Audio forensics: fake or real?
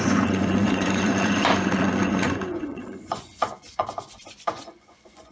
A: fake